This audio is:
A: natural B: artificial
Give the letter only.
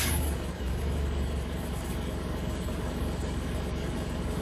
B